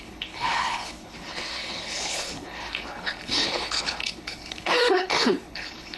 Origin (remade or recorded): remade